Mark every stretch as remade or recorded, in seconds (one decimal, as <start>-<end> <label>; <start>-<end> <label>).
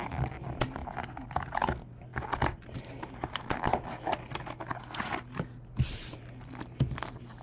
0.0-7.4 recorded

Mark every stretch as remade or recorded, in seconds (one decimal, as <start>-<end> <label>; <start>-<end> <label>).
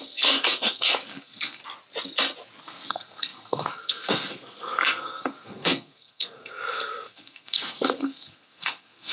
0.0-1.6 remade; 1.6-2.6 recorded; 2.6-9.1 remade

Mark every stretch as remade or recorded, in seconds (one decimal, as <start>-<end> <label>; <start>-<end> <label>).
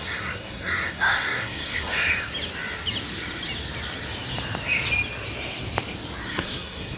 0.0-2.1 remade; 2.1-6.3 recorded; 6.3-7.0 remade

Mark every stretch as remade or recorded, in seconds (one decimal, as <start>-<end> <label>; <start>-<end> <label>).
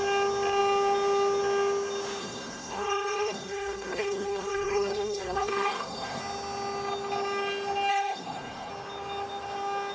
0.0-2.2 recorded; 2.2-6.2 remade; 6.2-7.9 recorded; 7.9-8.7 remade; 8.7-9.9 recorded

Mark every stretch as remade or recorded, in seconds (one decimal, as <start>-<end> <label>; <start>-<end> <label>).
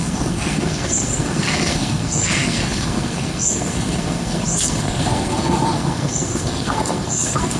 0.0-7.6 remade